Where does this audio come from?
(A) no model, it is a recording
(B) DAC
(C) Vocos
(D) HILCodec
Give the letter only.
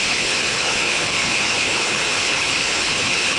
D